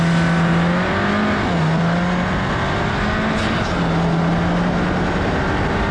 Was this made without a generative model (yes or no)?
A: yes